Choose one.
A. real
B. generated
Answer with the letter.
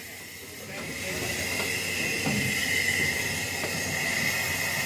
A